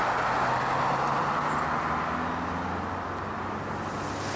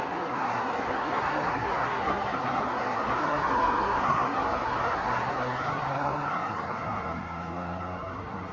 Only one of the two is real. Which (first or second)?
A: first